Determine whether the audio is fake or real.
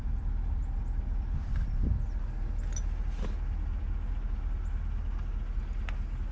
real